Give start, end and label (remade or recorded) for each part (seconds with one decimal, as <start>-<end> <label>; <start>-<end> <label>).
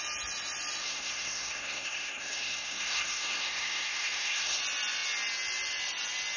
0.0-0.8 recorded; 0.8-4.6 remade; 4.6-6.4 recorded